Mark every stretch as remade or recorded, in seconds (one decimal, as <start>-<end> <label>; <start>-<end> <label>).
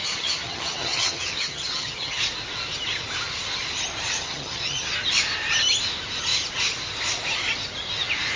0.0-2.2 remade; 2.2-4.1 recorded; 4.1-4.9 remade; 4.9-8.4 recorded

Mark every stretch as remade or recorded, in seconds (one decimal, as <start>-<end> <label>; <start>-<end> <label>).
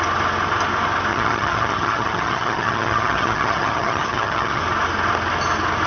0.0-1.1 recorded; 1.1-4.6 remade; 4.6-5.9 recorded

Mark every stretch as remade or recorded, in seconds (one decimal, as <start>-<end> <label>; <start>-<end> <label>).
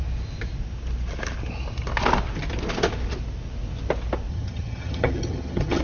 0.0-4.3 recorded; 4.3-5.8 remade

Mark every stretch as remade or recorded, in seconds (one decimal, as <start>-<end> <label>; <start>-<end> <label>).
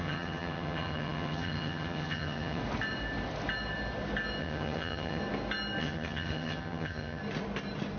0.0-2.6 remade; 2.6-4.4 recorded; 4.4-5.2 remade; 5.2-5.8 recorded; 5.8-7.2 remade; 7.2-8.0 recorded